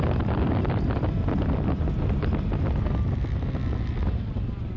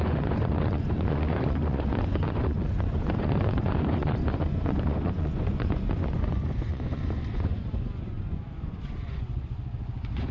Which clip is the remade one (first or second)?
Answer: second